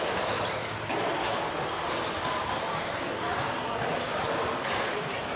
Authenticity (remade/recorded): remade